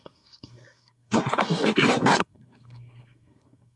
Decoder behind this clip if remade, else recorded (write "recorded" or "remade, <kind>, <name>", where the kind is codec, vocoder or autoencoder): remade, codec, SNAC